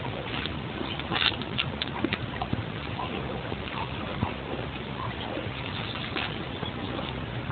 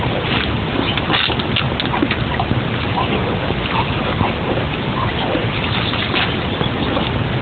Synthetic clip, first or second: first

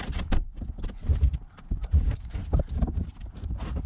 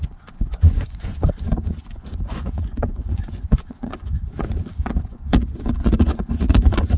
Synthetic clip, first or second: second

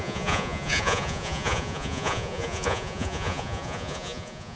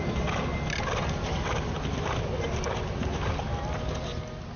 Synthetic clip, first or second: first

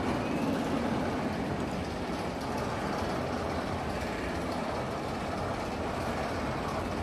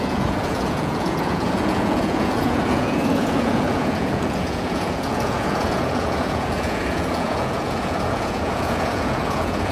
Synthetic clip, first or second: second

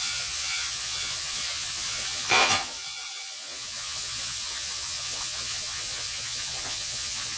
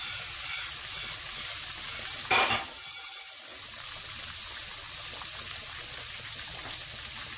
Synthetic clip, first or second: first